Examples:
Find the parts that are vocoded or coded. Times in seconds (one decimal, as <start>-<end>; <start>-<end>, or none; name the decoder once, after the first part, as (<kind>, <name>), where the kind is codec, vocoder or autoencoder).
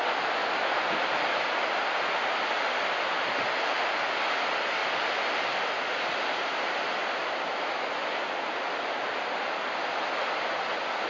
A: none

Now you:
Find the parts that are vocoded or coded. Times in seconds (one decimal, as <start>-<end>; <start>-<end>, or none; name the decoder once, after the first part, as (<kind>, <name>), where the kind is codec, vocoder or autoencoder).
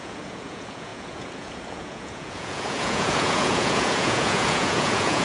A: 0.0-5.2 (vocoder, Vocos)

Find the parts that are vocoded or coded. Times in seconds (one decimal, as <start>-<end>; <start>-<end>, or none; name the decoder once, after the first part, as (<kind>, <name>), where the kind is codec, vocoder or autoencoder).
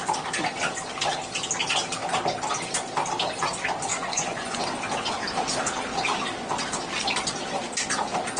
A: 3.9-4.6 (vocoder, Vocos)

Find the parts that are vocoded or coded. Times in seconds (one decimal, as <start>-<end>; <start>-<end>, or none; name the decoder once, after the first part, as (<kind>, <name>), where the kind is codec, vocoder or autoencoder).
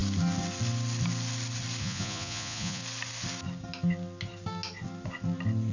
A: 1.8-2.8 (vocoder, Vocos)